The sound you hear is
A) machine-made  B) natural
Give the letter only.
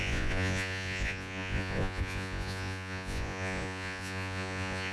A